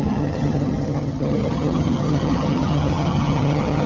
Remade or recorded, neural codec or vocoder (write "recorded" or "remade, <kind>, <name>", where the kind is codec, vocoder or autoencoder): remade, vocoder, HiFi-GAN